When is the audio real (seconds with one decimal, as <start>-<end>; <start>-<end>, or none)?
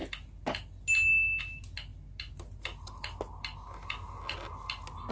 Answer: 0.0-5.1